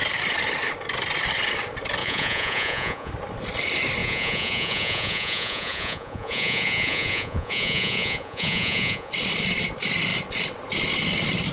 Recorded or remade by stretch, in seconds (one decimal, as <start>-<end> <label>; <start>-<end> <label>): 0.0-2.0 recorded; 2.0-3.1 remade; 3.1-4.0 recorded; 4.0-9.1 remade; 9.1-11.5 recorded